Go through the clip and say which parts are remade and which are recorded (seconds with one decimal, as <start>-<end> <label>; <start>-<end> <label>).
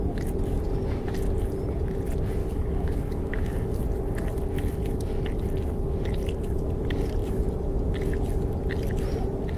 0.0-2.4 recorded; 2.4-3.7 remade; 3.7-9.6 recorded